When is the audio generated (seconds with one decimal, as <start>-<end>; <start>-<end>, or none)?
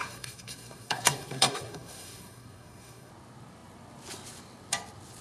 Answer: 0.0-3.1